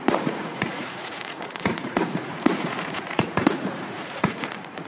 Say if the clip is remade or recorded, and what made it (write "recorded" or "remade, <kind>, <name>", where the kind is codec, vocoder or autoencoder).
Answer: remade, vocoder, Vocos